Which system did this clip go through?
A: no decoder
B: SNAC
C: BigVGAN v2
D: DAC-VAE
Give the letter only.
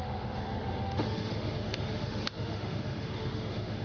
D